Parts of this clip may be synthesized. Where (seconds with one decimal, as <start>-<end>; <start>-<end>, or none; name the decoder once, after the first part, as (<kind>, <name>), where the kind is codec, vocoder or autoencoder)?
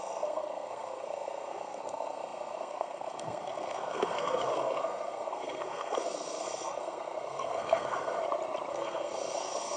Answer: 0.0-8.2 (codec, SNAC); 8.7-9.8